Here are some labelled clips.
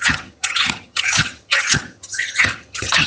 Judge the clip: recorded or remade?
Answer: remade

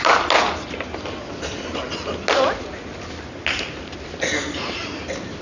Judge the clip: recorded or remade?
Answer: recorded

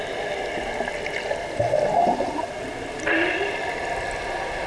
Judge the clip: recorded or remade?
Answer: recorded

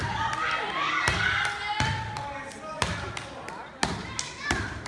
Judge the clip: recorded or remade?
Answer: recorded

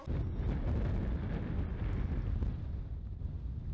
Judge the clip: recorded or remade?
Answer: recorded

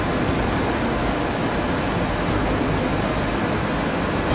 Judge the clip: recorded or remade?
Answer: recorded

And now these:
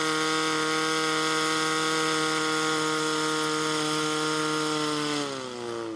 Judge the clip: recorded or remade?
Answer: recorded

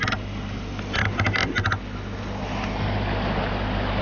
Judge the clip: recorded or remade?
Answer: recorded